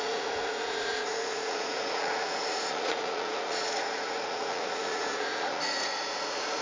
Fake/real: fake